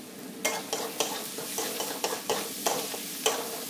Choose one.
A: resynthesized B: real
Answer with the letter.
B